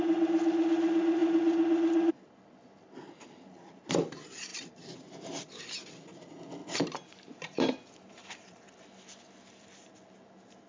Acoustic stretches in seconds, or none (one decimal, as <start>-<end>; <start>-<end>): 0.0-4.5; 5.6-6.6; 8.6-10.7